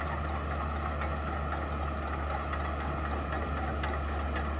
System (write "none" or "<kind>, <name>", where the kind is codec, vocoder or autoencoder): none